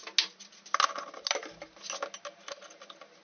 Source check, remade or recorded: recorded